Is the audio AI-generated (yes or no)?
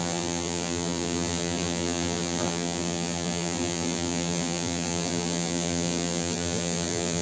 yes